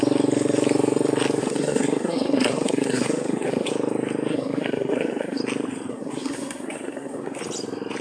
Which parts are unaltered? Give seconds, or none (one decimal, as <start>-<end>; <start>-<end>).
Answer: 0.0-1.4; 3.7-4.3; 5.4-5.9; 7.4-8.0